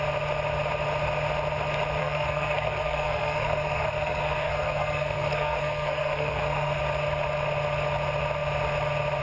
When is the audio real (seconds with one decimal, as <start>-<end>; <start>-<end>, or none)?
0.0-2.0; 6.8-9.2